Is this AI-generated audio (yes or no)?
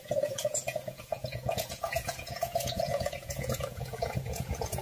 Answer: yes